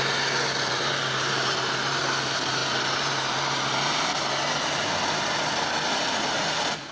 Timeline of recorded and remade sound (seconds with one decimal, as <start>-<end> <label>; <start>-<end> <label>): 0.0-6.9 recorded